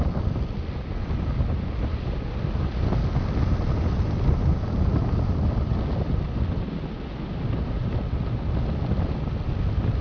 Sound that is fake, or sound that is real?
real